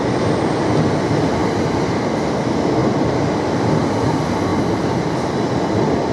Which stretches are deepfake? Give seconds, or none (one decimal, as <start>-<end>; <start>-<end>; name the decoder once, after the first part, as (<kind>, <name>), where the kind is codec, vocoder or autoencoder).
1.4-1.9 (vocoder, BigVGAN v2); 2.8-3.8; 4.5-6.1